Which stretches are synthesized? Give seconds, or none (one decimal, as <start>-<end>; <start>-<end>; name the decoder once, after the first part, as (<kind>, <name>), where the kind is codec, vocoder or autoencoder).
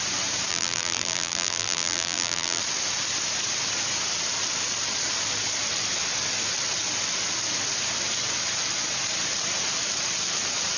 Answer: 0.5-2.6 (vocoder, BigVGAN v2)